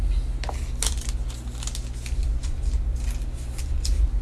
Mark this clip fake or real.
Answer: real